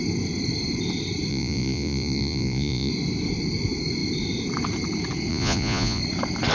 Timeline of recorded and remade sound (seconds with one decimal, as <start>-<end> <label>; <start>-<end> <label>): 0.0-1.3 recorded; 1.3-2.9 remade; 2.9-5.3 recorded; 5.3-6.0 remade; 6.0-6.5 recorded